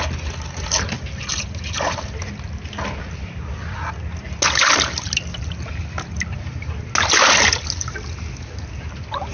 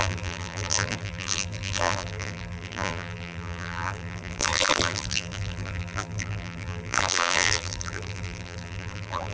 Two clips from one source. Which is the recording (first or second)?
first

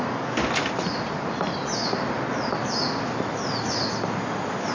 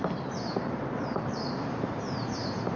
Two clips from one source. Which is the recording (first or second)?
first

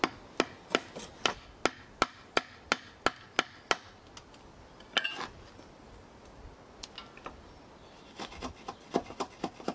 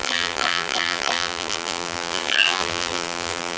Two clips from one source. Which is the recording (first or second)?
first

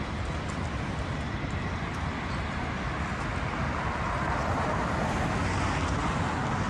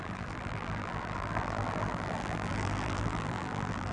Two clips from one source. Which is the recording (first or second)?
first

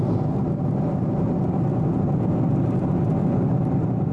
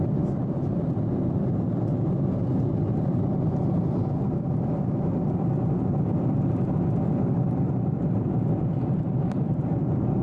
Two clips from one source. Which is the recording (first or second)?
first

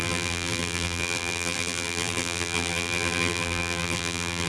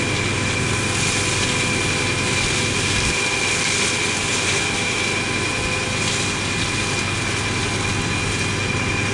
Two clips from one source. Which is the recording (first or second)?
second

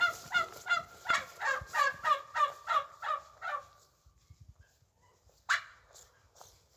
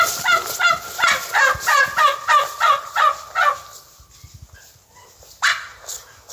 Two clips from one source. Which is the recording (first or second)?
second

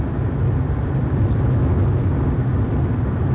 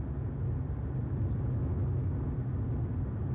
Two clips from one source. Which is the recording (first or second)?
second